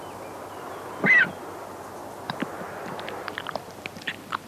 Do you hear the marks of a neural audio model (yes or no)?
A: no